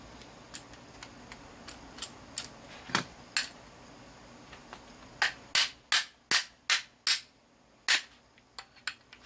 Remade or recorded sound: recorded